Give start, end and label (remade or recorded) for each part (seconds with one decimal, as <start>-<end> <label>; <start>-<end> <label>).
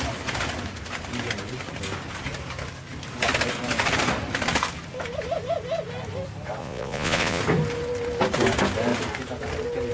0.0-6.6 recorded; 6.6-7.4 remade; 7.4-9.9 recorded